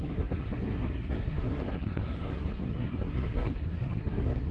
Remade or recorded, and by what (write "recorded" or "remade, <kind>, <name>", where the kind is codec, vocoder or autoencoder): remade, codec, SNAC